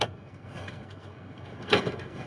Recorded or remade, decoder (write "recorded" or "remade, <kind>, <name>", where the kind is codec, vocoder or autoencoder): remade, codec, SNAC